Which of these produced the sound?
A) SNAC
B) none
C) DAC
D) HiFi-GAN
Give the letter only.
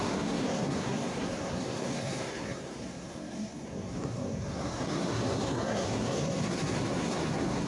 A